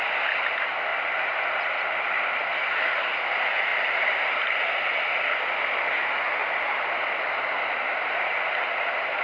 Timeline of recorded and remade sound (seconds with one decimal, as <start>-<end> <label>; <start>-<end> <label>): 0.0-0.9 recorded; 0.9-2.5 remade; 2.5-3.7 recorded; 3.7-4.2 remade; 4.2-9.2 recorded